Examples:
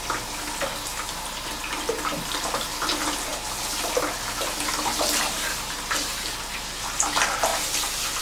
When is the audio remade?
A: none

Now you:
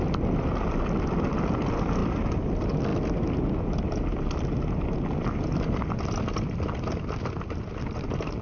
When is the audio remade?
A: none

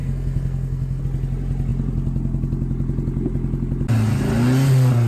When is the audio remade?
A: 0.0-1.0 (codec, SNAC)

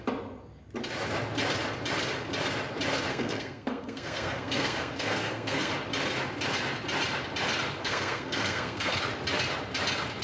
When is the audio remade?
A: 3.1-5.7 (codec, SNAC); 7.8-9.0

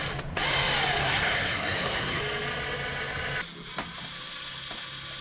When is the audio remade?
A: 1.0-2.2 (codec, SNAC)